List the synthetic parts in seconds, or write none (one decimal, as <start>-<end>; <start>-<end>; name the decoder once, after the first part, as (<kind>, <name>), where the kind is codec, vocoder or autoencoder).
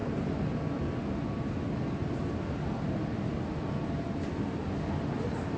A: none